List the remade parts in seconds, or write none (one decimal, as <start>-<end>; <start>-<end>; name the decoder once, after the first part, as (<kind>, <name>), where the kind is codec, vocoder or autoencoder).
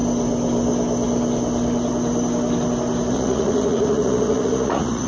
3.1-5.1 (vocoder, Vocos)